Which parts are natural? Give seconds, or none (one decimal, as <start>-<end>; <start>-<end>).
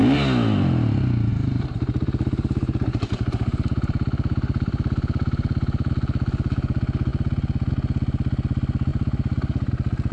0.0-1.3; 5.9-8.9; 9.7-10.1